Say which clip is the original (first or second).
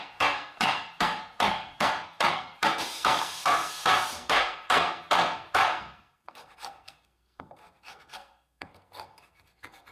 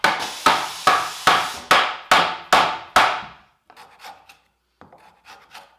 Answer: second